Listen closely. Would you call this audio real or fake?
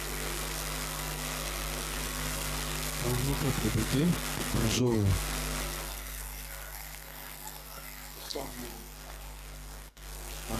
fake